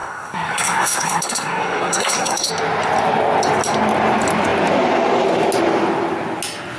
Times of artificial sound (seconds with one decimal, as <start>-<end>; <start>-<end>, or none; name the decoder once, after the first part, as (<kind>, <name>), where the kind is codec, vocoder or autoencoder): 0.0-2.5 (codec, SNAC)